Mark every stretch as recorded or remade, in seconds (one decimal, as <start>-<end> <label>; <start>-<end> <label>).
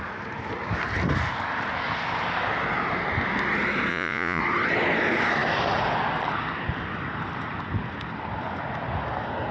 0.0-3.9 recorded; 3.9-4.4 remade; 4.4-9.5 recorded